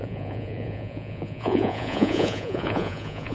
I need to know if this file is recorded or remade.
remade